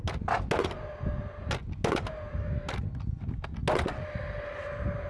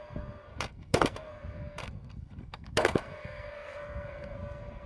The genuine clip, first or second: first